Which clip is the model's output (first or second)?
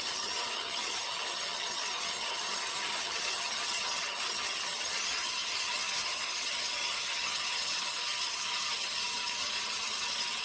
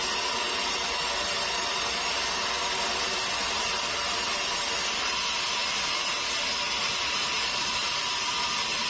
first